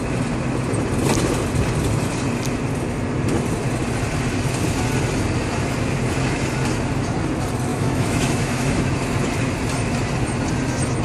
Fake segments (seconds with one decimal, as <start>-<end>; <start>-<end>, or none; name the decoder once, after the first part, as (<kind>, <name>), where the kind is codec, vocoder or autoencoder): 7.7-8.8 (autoencoder, DAC-VAE)